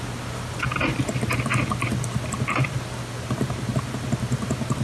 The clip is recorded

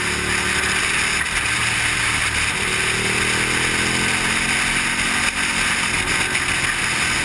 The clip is recorded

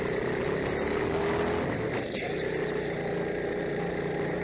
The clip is recorded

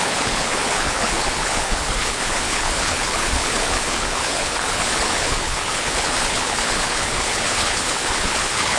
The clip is remade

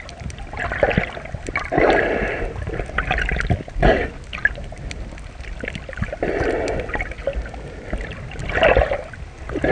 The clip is recorded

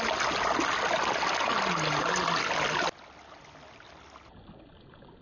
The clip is recorded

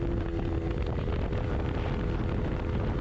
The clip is recorded